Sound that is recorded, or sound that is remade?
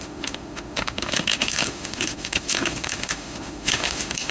remade